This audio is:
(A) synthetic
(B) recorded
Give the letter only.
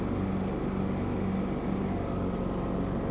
B